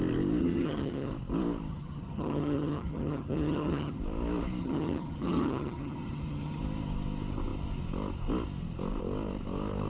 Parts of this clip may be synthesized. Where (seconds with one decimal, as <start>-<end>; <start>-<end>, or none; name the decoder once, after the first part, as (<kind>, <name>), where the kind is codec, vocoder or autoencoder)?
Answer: 0.4-1.1 (vocoder, HiFi-GAN); 1.7-4.0; 4.6-6.6